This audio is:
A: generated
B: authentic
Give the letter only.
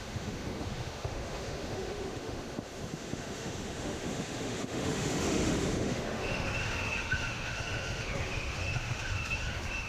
A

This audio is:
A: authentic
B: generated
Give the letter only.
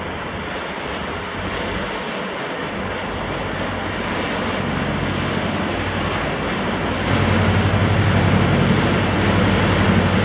A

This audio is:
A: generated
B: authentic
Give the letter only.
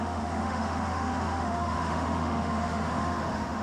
A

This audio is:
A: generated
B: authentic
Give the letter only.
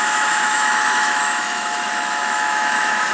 A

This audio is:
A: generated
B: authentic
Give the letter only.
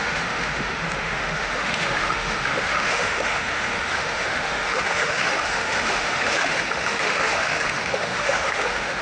A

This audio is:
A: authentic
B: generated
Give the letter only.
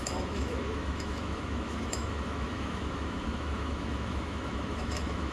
B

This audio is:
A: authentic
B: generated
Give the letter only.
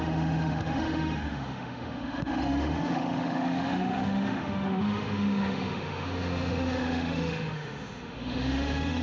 B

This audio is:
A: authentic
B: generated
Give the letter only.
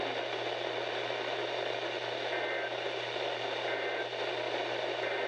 A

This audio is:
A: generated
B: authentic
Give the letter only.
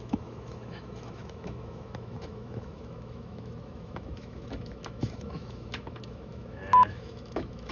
A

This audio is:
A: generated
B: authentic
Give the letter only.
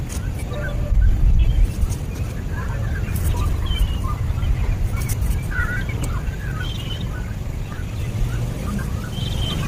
B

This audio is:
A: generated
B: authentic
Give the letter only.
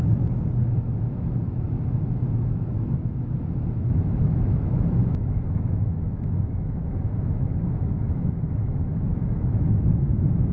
A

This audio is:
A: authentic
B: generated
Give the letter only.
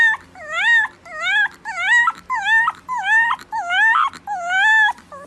A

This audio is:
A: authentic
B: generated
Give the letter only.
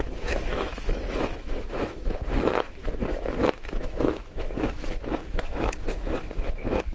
B